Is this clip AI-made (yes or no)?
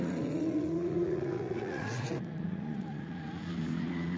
yes